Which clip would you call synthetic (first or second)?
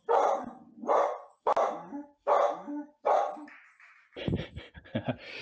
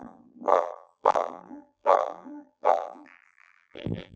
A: second